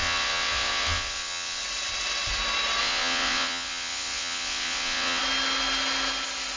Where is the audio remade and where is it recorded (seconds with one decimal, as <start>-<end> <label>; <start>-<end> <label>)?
0.0-1.6 remade; 1.6-2.8 recorded; 2.8-5.2 remade; 5.2-6.6 recorded